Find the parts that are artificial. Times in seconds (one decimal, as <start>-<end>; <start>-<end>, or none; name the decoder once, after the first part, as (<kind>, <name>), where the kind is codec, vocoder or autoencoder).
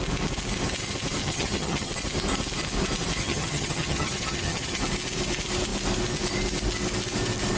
1.2-1.9 (vocoder, HiFi-GAN); 3.2-4.8